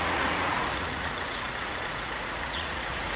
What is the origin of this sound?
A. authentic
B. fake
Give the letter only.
B